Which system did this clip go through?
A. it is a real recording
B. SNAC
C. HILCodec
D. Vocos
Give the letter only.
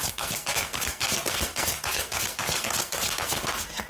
B